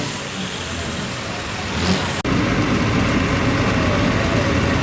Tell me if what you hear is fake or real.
real